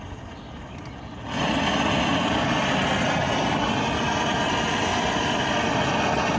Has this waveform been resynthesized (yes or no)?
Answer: no